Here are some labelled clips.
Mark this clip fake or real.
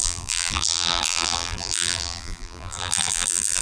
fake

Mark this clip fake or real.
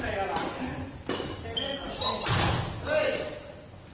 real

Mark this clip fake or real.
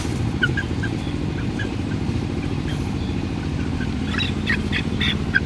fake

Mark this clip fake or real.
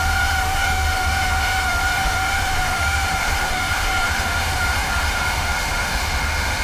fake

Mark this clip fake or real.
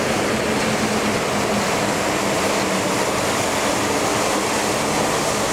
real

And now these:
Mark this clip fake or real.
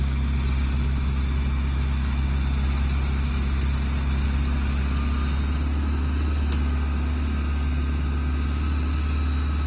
real